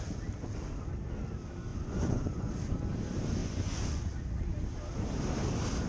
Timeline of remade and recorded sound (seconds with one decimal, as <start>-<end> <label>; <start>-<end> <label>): 0.0-1.7 recorded; 1.7-2.5 remade; 2.5-3.4 recorded; 3.4-4.0 remade; 4.0-5.9 recorded